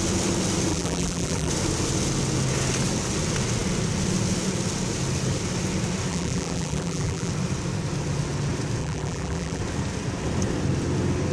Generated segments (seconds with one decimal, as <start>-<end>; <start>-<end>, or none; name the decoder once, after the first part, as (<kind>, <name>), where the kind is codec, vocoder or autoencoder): 0.7-1.5 (vocoder, BigVGAN v2); 6.1-7.3; 8.8-9.6